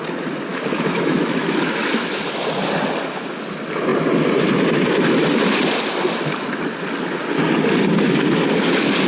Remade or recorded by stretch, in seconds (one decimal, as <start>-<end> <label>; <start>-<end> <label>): 0.0-0.5 recorded; 0.5-2.2 remade; 2.2-9.1 recorded